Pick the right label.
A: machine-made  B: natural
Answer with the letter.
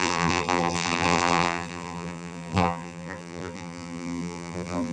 A